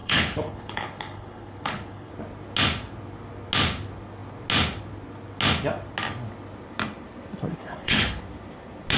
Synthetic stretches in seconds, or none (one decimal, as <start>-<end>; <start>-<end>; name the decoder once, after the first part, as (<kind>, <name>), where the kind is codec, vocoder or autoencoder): 0.0-2.1 (codec, HILCodec); 7.5-8.2